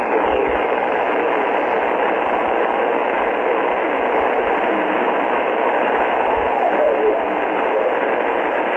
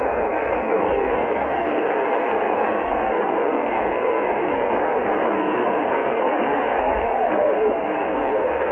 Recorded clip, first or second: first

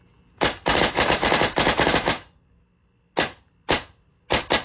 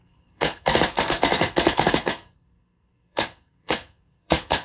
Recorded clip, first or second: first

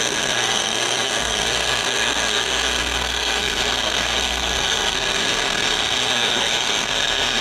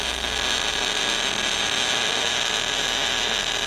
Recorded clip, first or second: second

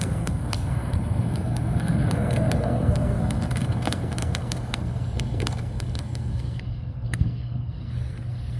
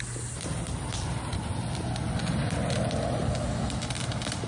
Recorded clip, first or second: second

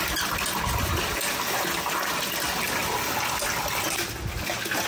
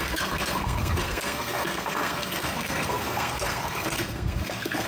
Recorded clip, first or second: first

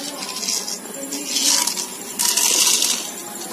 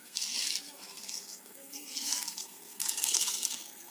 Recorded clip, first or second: first